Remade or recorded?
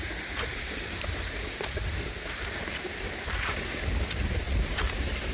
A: remade